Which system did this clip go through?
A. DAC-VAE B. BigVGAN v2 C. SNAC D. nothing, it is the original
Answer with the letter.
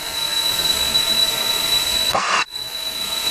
C